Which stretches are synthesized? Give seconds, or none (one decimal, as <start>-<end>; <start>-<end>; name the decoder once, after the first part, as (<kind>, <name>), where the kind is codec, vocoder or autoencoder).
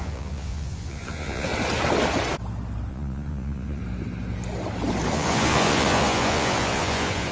0.0-1.5 (vocoder, Vocos); 2.9-3.8; 5.1-7.3